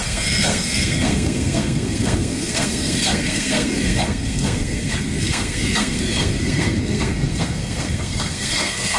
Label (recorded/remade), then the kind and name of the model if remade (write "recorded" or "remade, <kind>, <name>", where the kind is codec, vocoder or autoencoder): remade, codec, SNAC